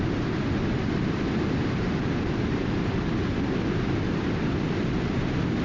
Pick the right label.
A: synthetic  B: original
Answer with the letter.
B